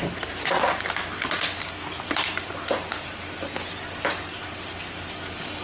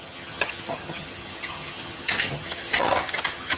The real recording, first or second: first